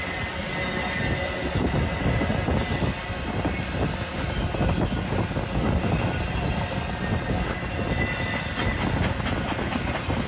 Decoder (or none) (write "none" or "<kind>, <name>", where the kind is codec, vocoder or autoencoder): none